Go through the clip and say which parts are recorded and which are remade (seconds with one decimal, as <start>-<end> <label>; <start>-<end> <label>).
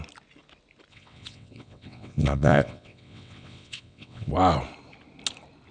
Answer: 0.0-0.9 recorded; 0.9-4.3 remade; 4.3-5.7 recorded